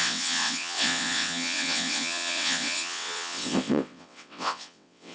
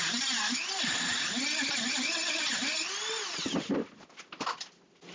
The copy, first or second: first